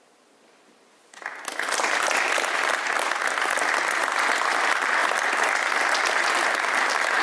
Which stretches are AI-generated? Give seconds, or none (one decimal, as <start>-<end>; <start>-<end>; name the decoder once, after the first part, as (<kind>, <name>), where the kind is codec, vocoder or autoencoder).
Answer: none